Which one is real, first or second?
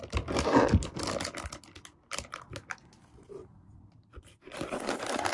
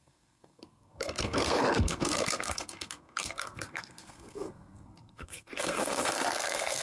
first